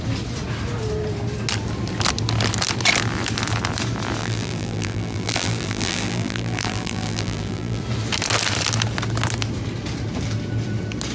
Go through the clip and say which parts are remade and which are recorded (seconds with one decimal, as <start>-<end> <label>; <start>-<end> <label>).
0.0-4.2 recorded; 4.2-7.8 remade; 7.8-11.1 recorded